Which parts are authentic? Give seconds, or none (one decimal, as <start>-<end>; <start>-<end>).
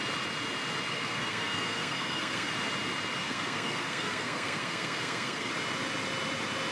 0.0-0.9; 2.5-3.2; 5.5-6.7